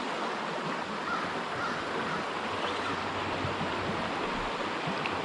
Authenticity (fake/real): real